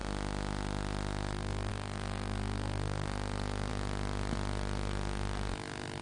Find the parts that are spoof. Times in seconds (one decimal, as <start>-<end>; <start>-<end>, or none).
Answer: none